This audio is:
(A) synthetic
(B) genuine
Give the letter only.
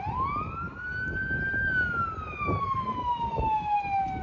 B